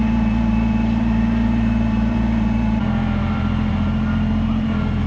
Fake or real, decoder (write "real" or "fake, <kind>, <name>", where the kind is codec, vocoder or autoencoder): fake, vocoder, BigVGAN v2